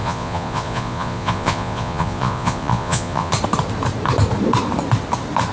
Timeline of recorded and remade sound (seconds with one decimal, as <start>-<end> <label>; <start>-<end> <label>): 0.0-3.3 remade; 3.3-5.5 recorded